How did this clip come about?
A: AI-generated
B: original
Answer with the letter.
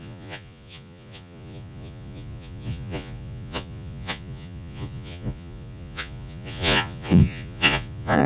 A